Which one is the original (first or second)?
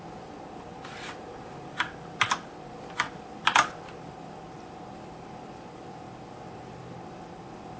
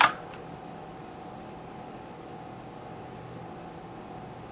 second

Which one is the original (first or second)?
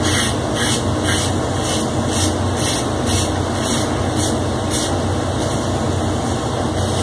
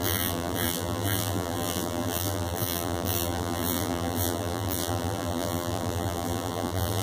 first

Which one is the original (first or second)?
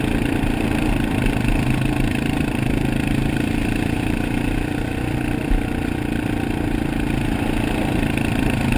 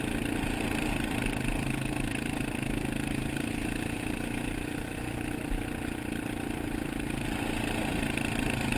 second